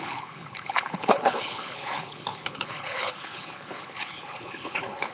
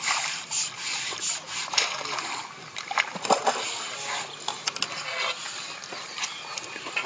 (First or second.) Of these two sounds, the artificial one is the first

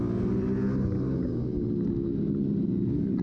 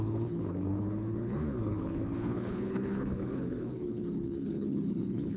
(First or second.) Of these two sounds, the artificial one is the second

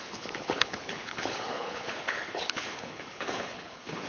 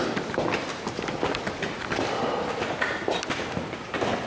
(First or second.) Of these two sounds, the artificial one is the first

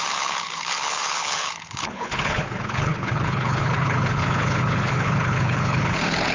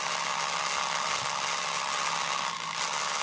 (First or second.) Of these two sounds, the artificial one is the first